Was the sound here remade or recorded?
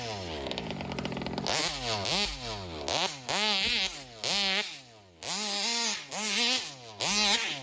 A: recorded